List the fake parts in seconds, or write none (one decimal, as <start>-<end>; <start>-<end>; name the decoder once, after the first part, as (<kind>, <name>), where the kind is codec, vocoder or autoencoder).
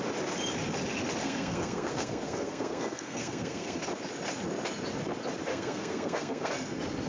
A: 1.2-3.8 (codec, SNAC); 5.5-6.5